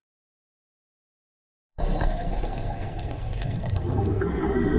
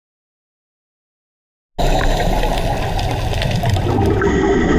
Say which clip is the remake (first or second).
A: first